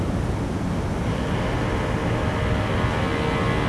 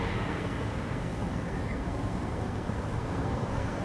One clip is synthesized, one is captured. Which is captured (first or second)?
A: first